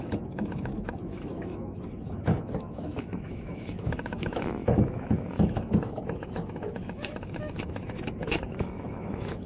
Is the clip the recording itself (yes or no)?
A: no